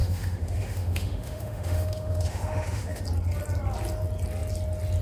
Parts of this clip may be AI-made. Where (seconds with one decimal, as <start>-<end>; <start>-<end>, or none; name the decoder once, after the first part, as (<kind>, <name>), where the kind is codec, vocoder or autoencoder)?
0.0-3.0 (autoencoder, DAC-VAE)